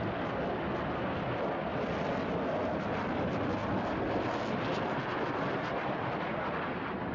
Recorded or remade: recorded